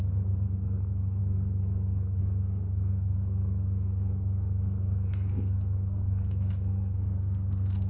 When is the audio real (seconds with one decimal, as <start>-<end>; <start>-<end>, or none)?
none

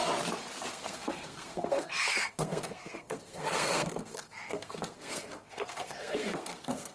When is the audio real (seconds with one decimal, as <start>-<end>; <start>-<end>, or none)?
0.0-0.7

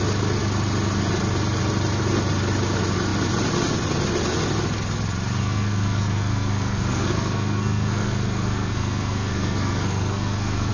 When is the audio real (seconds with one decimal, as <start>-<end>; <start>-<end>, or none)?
0.0-5.4

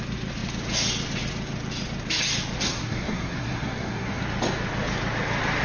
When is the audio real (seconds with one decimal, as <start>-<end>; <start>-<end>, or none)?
0.0-2.6; 4.2-5.6

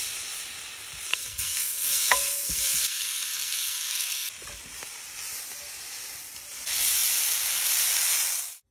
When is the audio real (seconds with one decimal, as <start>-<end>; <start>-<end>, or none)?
0.0-1.1; 4.3-8.7